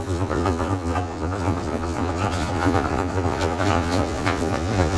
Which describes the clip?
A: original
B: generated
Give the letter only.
B